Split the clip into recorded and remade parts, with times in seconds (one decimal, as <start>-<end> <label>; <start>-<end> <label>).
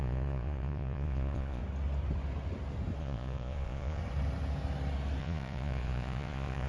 0.0-1.6 remade; 1.6-3.0 recorded; 3.0-4.0 remade; 4.0-5.2 recorded; 5.2-6.7 remade